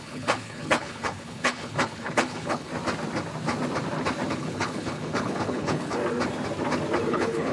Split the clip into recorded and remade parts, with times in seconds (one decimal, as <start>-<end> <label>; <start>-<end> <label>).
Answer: 0.0-2.7 remade; 2.7-4.3 recorded; 4.3-6.0 remade; 6.0-7.1 recorded; 7.1-7.5 remade